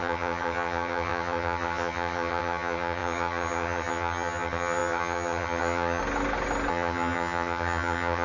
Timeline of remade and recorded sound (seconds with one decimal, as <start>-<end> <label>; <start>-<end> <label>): 0.0-6.0 remade; 6.0-6.7 recorded; 6.7-8.2 remade